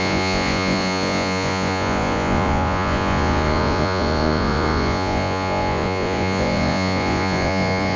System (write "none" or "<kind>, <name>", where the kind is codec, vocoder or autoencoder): vocoder, Vocos